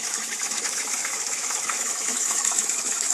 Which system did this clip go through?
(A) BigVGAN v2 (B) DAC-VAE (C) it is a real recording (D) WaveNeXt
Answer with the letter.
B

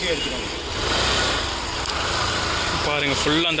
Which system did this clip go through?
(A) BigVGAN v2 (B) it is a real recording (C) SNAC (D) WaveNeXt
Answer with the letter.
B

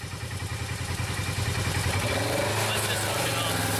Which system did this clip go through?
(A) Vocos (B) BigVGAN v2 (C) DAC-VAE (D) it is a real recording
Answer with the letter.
D